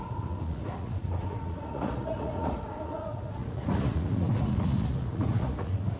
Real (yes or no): no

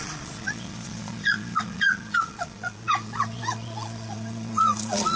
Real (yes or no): no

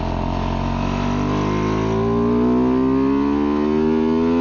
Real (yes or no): yes